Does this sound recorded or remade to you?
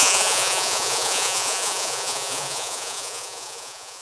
remade